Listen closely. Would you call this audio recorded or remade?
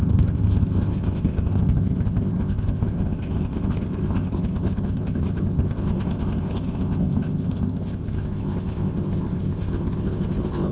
remade